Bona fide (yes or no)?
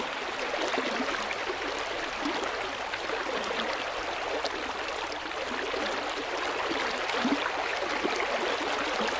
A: yes